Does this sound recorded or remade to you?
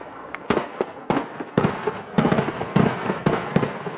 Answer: remade